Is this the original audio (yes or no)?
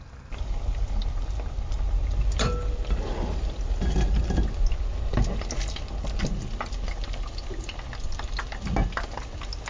yes